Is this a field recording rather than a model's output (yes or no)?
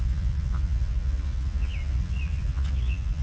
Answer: no